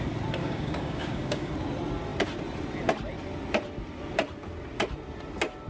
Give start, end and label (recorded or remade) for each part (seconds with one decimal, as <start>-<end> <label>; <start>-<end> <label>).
0.0-0.4 recorded; 0.4-1.5 remade; 1.5-5.7 recorded